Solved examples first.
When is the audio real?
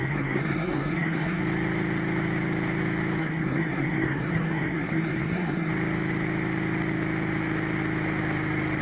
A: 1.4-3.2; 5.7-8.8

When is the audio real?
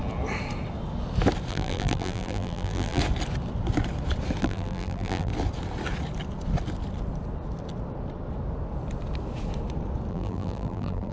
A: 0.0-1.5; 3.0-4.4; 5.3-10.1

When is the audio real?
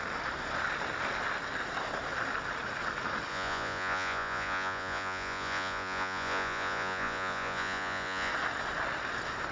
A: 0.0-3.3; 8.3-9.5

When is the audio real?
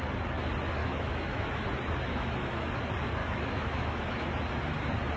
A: 0.0-0.8; 1.5-2.1; 2.7-3.2; 4.3-5.2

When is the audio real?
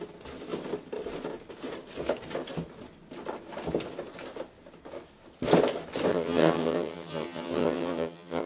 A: 0.0-6.1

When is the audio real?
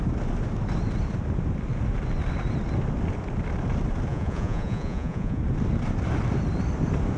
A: 0.0-4.1; 5.4-7.2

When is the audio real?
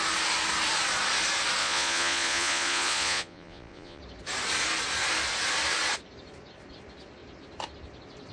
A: 0.0-1.6; 4.0-8.3